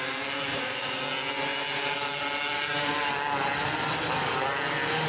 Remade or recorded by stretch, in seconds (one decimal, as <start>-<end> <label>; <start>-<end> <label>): 0.0-0.5 recorded; 0.5-1.0 remade; 1.0-5.1 recorded